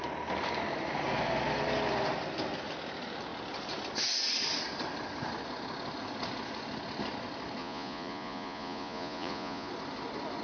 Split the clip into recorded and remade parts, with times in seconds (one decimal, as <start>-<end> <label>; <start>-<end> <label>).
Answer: 0.0-7.6 recorded; 7.6-9.7 remade; 9.7-10.4 recorded